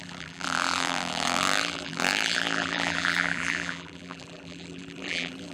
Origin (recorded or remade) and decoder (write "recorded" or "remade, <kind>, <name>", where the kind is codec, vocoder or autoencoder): remade, vocoder, BigVGAN v2